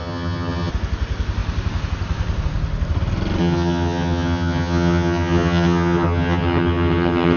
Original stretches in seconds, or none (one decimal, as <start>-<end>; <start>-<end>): 0.7-3.4